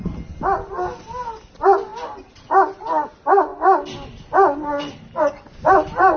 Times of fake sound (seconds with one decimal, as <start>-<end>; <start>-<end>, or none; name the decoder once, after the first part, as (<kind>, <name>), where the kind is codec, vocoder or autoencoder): none